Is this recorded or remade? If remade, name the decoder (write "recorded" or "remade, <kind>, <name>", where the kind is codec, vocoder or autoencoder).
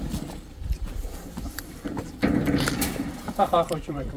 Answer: remade, vocoder, BigVGAN v2